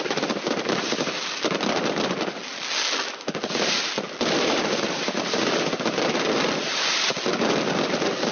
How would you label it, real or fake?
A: real